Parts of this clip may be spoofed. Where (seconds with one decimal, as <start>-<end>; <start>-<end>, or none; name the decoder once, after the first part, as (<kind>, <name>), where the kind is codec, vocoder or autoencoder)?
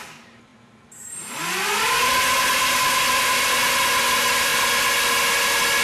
4.5-5.1 (vocoder, BigVGAN v2)